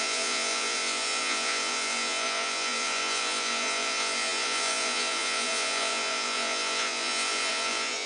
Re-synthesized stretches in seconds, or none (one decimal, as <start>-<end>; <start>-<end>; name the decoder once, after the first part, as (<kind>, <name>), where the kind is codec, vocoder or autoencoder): 0.0-8.1 (vocoder, Vocos)